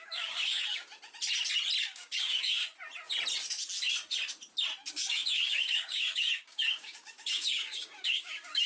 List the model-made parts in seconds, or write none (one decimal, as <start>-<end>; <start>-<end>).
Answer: 0.0-0.9; 1.8-2.6; 4.9-8.7